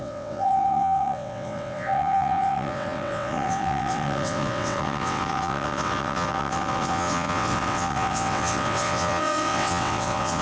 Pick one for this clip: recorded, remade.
remade